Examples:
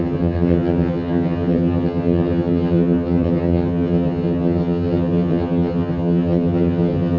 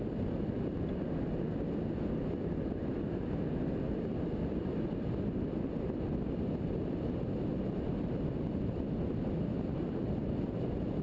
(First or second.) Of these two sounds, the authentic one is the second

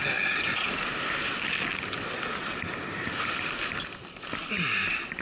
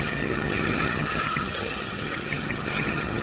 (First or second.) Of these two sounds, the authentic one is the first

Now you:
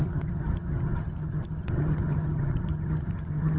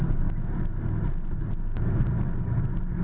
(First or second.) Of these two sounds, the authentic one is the second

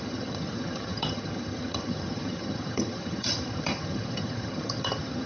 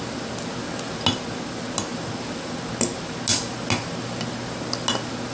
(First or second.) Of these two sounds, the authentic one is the second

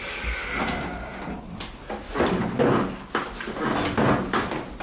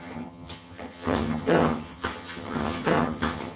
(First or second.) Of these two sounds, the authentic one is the first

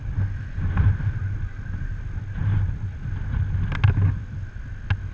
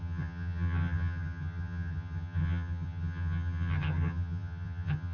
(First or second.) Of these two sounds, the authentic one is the first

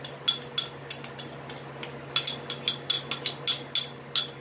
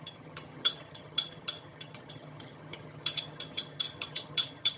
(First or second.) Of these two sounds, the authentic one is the first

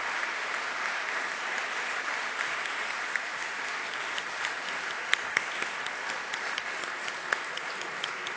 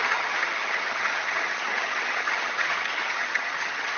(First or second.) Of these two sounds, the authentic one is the first